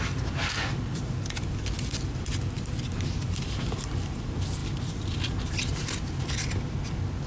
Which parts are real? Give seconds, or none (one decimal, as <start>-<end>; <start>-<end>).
0.0-7.3